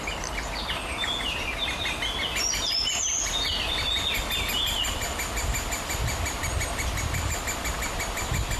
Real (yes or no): yes